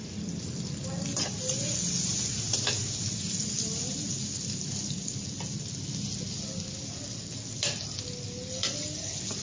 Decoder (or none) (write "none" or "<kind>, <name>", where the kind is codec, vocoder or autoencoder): none